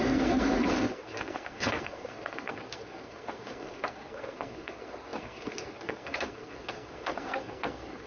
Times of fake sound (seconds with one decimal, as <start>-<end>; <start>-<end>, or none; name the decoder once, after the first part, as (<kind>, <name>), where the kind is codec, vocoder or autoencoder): 0.0-8.1 (codec, SNAC)

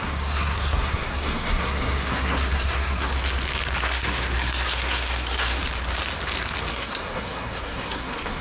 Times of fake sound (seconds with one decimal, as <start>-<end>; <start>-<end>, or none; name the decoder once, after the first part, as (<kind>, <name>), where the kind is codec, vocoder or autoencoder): 0.0-3.1 (codec, SNAC); 3.8-5.6; 6.7-8.4